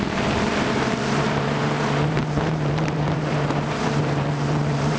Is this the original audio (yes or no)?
no